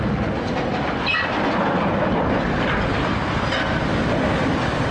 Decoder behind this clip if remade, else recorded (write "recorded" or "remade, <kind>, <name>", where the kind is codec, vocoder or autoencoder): recorded